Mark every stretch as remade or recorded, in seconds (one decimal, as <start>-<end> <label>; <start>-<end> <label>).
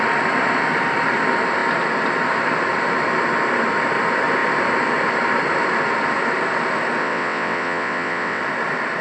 0.0-7.0 recorded; 7.0-8.4 remade; 8.4-9.0 recorded